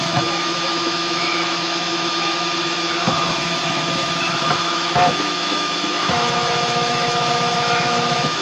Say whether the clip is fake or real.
fake